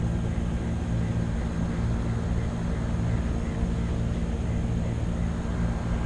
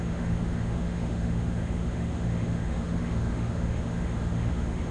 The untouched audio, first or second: first